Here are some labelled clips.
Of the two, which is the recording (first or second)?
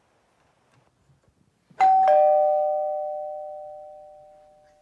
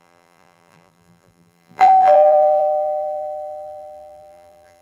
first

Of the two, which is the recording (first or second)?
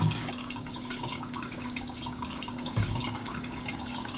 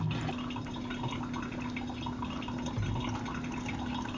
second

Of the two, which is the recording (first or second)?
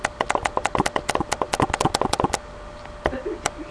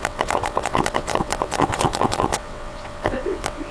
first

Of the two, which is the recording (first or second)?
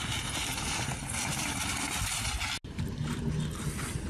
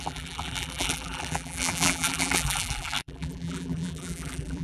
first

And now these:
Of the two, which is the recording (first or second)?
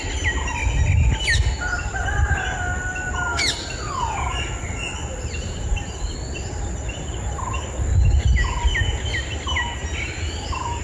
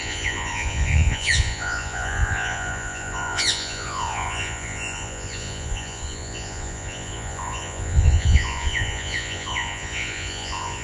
first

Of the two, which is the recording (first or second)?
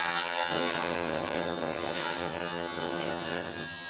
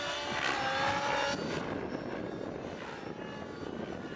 second